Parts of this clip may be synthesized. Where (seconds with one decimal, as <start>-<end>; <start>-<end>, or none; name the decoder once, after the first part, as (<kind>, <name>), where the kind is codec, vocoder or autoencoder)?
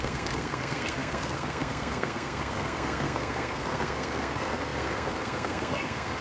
0.0-6.2 (codec, SNAC)